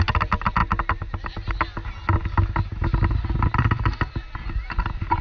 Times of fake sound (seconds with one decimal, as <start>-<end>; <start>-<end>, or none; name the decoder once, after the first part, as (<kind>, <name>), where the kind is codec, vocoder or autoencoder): none